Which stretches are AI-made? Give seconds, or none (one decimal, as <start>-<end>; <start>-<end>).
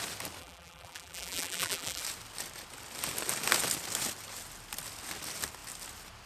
0.4-2.0